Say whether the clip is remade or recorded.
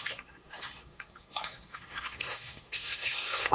remade